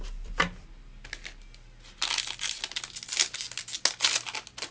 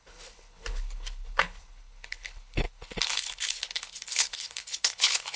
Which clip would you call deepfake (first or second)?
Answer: second